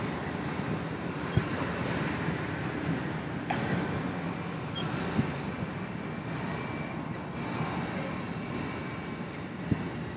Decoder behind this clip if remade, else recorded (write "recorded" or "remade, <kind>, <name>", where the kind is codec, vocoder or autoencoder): recorded